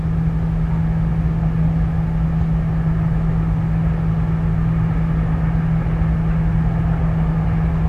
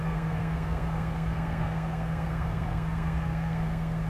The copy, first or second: second